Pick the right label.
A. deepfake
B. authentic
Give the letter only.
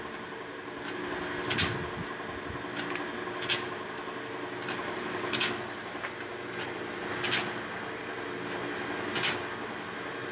B